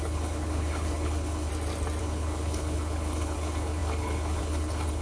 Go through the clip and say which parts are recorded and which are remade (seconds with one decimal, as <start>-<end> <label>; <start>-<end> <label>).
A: 0.0-1.5 remade; 1.5-2.0 recorded; 2.0-5.0 remade